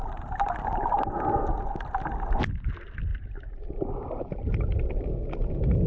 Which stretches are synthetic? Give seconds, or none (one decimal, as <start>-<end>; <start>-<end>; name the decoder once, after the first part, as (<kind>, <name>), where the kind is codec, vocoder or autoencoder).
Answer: 3.1-5.0 (vocoder, BigVGAN v2)